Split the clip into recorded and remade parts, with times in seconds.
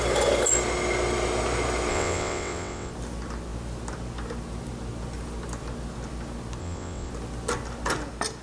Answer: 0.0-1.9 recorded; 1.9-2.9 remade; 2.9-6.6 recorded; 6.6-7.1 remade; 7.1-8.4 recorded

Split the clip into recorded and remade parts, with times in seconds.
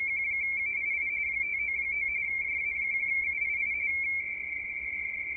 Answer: 0.0-0.7 recorded; 0.7-3.9 remade; 3.9-5.4 recorded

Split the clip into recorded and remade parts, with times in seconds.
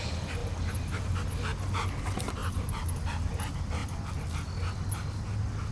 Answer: 0.0-5.7 recorded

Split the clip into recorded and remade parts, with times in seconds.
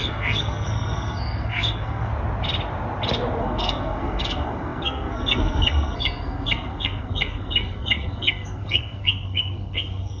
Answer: 0.0-2.1 remade; 2.1-3.4 recorded; 3.4-10.2 remade